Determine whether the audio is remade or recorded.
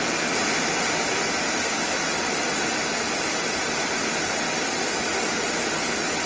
recorded